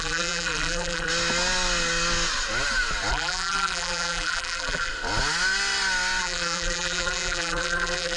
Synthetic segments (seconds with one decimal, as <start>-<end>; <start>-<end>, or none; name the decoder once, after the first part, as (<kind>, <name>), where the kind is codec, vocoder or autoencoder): 0.0-1.1 (vocoder, BigVGAN v2); 3.1-4.9; 6.2-8.2